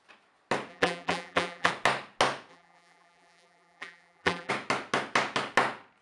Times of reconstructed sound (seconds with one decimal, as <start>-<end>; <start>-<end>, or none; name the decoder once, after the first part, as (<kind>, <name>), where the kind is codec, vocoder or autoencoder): 0.7-1.7 (vocoder, BigVGAN v2); 2.5-4.5